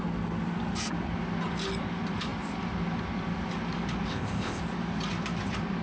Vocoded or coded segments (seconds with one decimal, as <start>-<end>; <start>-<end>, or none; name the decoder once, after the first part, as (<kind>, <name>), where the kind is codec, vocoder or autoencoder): 4.1-4.6 (codec, ZipCodec)